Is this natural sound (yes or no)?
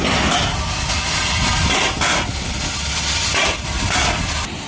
yes